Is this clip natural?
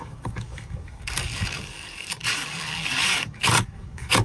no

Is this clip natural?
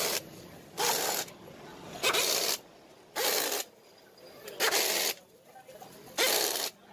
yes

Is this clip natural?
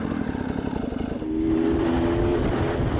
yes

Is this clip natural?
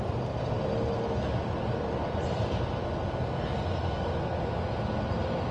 yes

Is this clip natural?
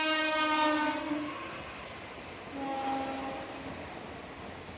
yes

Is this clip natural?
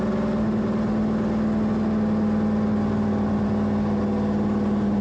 yes